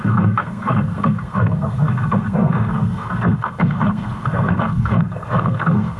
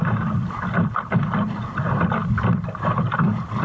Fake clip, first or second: first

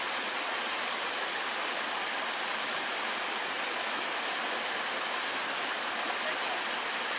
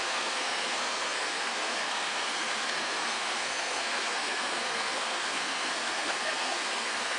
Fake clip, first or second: second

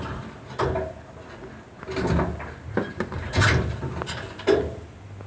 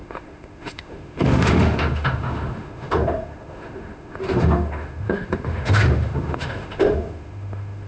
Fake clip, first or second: second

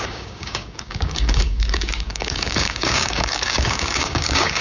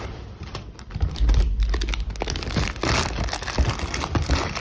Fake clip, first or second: first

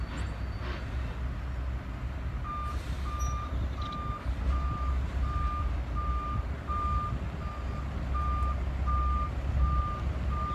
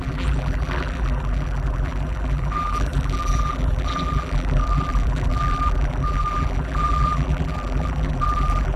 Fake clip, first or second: second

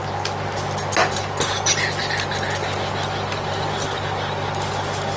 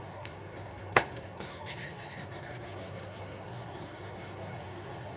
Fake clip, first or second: second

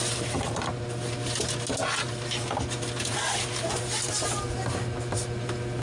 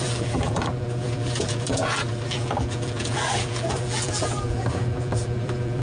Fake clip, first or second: second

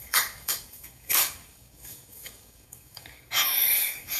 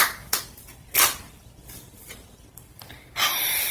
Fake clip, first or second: first